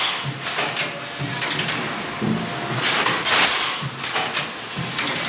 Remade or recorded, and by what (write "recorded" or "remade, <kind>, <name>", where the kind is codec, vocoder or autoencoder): recorded